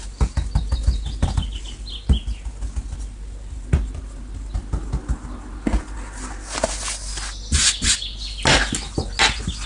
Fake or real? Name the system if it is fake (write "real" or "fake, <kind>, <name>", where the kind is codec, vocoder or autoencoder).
real